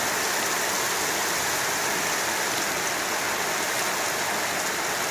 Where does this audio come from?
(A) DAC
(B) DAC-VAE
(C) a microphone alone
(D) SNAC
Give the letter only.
C